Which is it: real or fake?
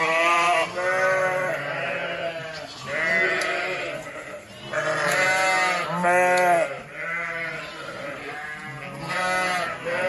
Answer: real